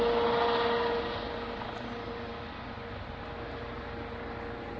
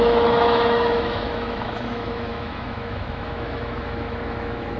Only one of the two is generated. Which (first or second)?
second